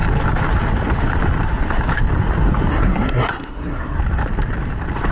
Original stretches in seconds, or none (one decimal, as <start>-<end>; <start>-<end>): 0.0-2.7; 4.0-5.1